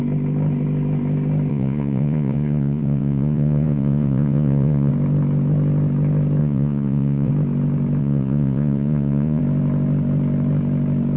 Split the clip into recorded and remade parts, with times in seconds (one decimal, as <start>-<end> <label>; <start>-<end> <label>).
0.0-1.5 recorded; 1.5-4.9 remade; 4.9-6.4 recorded; 6.4-7.3 remade; 7.3-8.0 recorded; 8.0-9.4 remade; 9.4-11.2 recorded